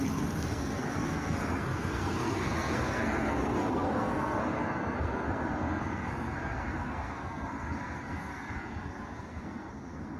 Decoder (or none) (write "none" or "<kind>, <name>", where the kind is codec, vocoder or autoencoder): codec, SNAC